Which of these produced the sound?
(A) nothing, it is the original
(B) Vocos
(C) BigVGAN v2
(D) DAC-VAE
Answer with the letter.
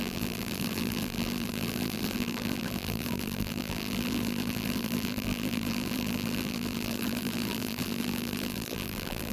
C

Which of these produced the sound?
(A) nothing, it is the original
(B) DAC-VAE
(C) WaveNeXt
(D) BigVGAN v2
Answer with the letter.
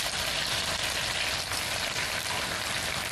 A